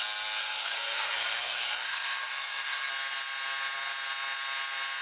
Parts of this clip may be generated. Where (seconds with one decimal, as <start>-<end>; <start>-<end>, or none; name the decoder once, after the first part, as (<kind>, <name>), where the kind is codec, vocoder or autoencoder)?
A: 0.4-2.9 (codec, SNAC)